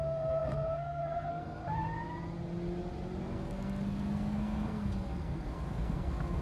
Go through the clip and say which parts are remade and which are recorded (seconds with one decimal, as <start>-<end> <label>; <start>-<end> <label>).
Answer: 0.0-1.6 remade; 1.6-3.2 recorded; 3.2-6.4 remade